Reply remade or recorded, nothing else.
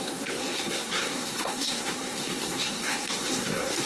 remade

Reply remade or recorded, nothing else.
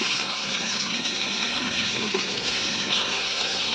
remade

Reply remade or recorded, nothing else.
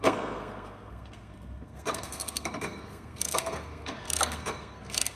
remade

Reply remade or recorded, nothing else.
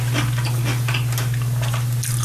recorded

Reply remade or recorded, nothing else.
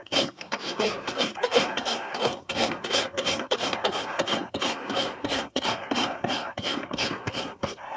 remade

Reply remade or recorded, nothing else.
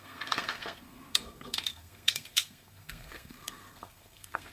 remade